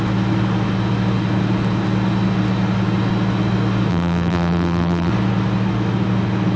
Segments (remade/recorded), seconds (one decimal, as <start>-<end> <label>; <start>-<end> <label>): 0.0-3.9 recorded; 3.9-5.1 remade; 5.1-6.6 recorded